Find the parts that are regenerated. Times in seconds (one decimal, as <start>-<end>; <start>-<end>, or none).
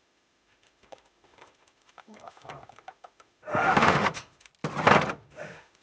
0.0-4.5; 5.1-5.8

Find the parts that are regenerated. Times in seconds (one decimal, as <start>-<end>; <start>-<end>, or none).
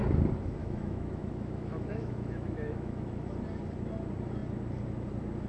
0.6-3.3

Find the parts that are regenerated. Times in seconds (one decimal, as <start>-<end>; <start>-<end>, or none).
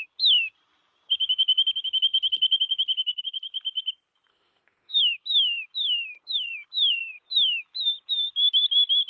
4.3-5.0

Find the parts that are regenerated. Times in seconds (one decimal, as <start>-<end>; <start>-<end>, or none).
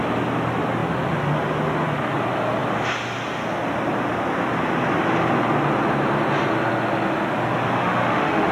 7.8-8.5